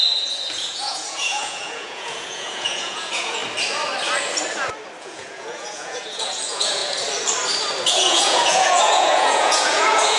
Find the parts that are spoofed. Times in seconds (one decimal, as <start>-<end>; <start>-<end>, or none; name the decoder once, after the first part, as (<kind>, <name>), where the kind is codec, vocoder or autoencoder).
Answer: 0.0-3.4 (vocoder, Vocos); 5.0-6.8; 7.9-10.2